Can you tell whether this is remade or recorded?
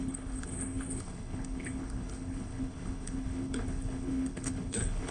remade